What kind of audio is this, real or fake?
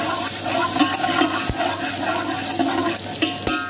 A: real